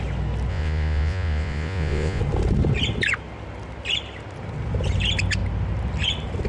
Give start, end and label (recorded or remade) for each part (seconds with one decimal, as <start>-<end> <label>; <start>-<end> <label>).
0.0-0.5 recorded; 0.5-2.2 remade; 2.2-6.5 recorded